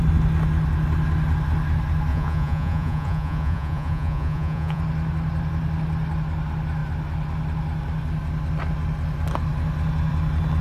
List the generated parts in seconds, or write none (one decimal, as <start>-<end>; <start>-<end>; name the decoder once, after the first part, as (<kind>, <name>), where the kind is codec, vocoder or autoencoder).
2.1-4.8 (vocoder, Vocos)

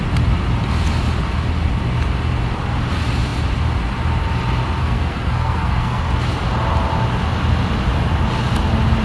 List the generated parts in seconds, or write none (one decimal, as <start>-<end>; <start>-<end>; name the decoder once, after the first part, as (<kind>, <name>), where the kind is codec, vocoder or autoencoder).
4.8-6.1 (codec, SNAC)